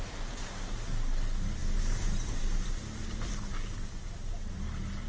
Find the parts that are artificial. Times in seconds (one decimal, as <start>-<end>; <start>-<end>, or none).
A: none